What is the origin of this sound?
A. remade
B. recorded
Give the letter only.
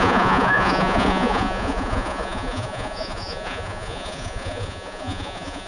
A